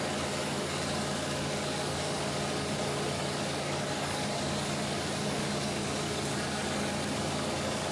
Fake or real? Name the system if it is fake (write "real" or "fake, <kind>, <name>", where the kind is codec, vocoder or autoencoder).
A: fake, codec, DAC